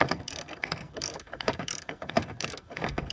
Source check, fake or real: fake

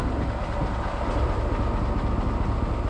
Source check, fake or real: real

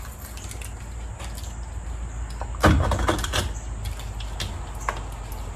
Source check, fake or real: real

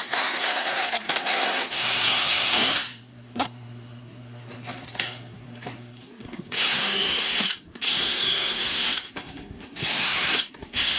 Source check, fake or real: fake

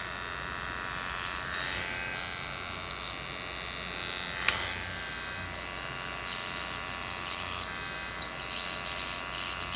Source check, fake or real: real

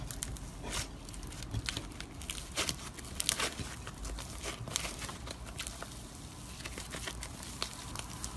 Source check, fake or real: real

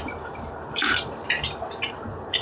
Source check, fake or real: fake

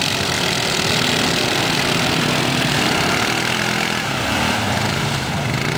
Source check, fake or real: fake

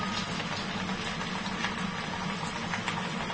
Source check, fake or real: real